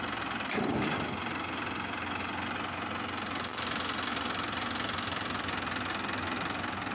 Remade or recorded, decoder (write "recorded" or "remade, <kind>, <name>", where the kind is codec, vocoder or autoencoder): recorded